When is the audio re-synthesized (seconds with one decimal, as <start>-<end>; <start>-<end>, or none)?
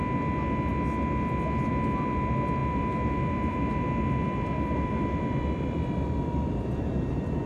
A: 2.6-7.1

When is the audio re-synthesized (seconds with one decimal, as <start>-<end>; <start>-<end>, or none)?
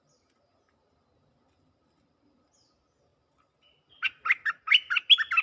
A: none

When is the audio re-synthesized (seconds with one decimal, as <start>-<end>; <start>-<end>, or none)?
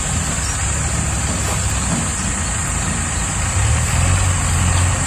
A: 2.1-2.7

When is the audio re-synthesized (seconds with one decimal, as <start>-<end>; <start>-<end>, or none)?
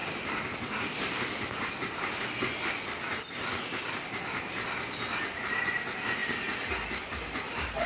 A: none